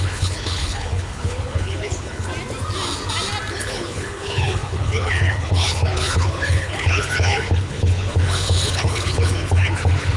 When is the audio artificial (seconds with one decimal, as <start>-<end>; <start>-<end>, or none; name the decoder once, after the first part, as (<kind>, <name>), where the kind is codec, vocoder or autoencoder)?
0.0-2.3 (codec, HILCodec); 3.5-10.2